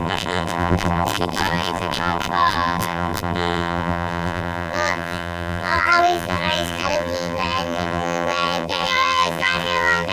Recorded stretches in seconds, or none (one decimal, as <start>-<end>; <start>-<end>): none